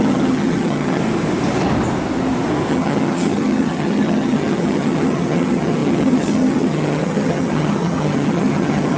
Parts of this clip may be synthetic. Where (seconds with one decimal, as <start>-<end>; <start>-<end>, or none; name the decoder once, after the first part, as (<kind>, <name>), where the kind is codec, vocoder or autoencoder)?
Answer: 0.0-1.0 (vocoder, HiFi-GAN); 2.7-9.0